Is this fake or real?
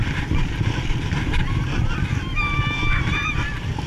real